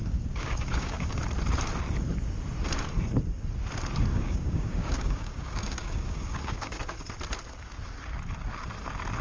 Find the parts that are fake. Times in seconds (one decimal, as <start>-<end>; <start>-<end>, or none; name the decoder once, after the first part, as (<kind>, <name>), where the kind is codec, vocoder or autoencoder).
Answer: 0.0-1.1 (codec, DAC); 4.1-6.8